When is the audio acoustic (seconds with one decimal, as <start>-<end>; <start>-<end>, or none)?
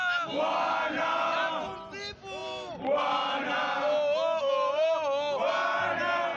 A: 0.0-2.4; 3.5-6.4